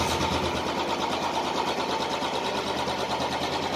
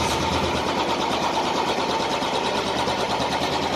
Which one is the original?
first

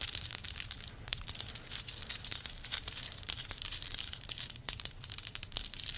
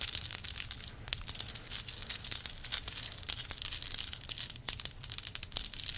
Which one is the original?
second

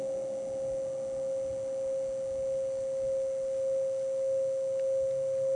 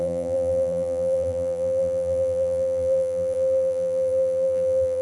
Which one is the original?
first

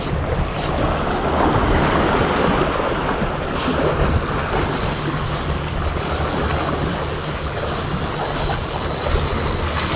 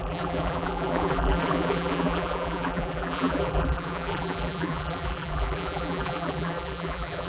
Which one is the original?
first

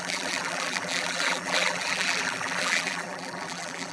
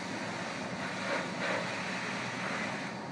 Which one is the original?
second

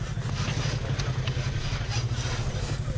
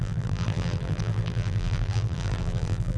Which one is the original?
first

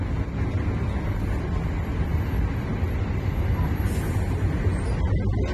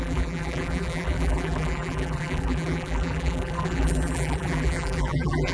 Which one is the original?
first